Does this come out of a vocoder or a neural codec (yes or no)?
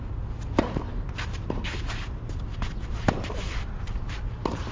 no